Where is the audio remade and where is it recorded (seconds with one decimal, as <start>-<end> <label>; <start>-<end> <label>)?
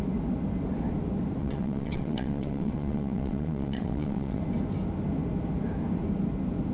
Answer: 0.0-1.4 recorded; 1.4-4.4 remade; 4.4-6.7 recorded